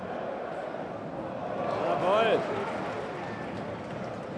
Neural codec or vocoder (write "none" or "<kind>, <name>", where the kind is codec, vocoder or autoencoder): none